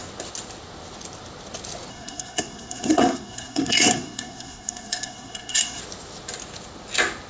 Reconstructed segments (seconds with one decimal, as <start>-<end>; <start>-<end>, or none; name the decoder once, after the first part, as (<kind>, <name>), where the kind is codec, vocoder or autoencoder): 1.9-5.8 (codec, SNAC)